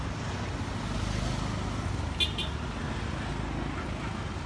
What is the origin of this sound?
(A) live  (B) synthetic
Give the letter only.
A